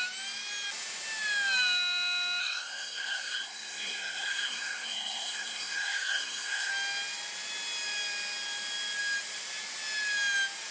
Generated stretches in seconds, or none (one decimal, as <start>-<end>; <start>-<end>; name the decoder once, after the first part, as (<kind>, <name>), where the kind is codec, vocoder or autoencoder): 2.4-6.7 (codec, SNAC)